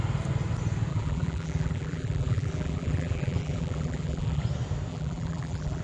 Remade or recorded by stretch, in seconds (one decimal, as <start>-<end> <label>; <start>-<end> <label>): 0.0-0.9 recorded; 0.9-4.4 remade; 4.4-4.9 recorded; 4.9-5.8 remade